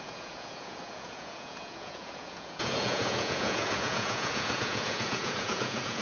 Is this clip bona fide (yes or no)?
no